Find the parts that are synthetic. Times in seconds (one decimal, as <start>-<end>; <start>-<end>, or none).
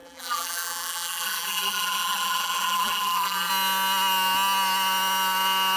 0.0-3.5